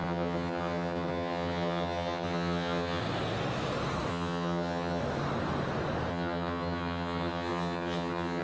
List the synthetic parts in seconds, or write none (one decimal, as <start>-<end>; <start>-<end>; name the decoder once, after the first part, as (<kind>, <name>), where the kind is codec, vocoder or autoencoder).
0.0-3.0 (vocoder, HiFi-GAN); 4.1-5.0; 6.1-8.4